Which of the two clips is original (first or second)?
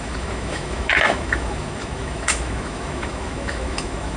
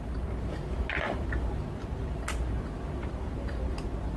second